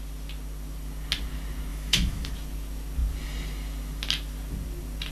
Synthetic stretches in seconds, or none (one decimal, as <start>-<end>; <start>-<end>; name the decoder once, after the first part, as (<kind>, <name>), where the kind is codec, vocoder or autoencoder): 1.7-2.3 (autoencoder, DAC-VAE)